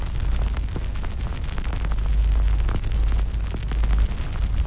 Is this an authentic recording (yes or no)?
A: yes